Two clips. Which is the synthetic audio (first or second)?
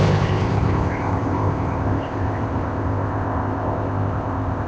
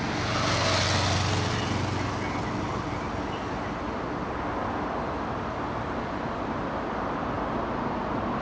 first